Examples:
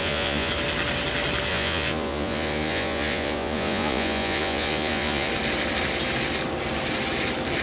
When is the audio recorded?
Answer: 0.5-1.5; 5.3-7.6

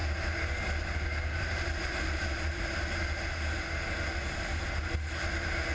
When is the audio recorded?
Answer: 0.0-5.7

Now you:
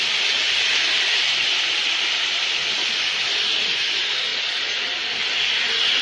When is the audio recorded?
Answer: 0.0-4.3; 4.8-6.0